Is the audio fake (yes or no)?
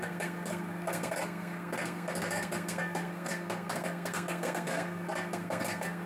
yes